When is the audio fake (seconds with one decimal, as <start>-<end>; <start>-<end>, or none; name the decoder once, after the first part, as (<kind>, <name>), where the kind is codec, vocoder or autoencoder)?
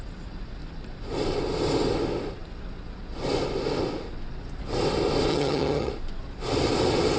5.3-5.9 (vocoder, HiFi-GAN)